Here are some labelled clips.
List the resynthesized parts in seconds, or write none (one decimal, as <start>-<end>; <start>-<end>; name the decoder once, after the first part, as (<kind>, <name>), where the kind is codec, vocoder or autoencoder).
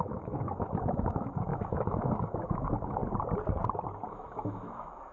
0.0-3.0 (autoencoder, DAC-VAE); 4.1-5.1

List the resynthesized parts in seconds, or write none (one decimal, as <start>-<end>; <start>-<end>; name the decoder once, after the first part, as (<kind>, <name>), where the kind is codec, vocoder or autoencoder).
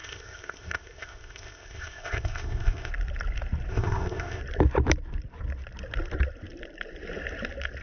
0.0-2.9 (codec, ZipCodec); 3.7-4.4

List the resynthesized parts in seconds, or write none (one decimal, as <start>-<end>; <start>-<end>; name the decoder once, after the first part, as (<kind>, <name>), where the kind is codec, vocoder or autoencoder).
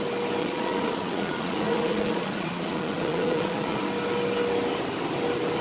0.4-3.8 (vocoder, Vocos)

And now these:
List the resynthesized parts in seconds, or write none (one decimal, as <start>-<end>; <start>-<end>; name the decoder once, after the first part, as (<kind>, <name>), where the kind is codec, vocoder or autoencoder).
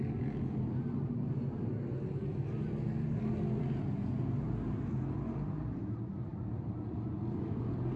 none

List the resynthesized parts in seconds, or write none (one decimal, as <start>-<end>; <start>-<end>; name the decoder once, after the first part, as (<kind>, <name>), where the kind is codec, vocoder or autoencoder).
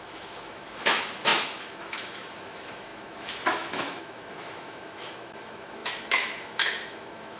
0.0-7.4 (autoencoder, DAC-VAE)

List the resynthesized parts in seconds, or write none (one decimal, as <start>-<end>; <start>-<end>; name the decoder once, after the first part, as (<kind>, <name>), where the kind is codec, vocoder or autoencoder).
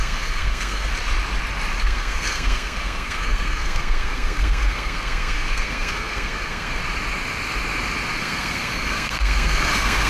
0.0-0.9 (codec, SNAC); 1.8-6.8; 8.2-10.1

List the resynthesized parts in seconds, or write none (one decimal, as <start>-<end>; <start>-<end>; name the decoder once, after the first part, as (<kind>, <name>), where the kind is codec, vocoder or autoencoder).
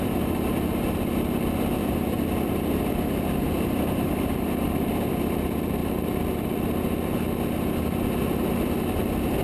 5.8-6.8 (vocoder, BigVGAN v2)